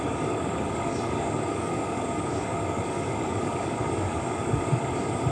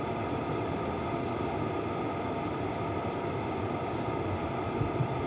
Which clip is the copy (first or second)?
first